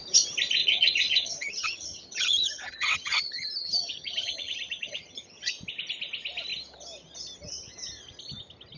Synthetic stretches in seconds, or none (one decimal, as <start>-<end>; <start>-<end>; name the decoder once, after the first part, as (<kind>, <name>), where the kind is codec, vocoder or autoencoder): 0.6-5.5 (vocoder, HiFi-GAN)

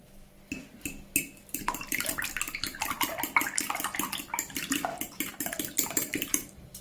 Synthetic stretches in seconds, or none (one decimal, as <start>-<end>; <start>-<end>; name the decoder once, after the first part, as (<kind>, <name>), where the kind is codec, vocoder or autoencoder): 1.4-2.2 (vocoder, BigVGAN v2); 4.9-6.8